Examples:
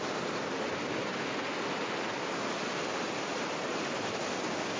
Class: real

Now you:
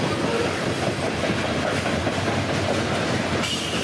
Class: real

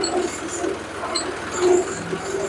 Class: real